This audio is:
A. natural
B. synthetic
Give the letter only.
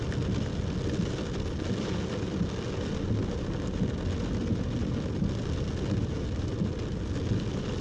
A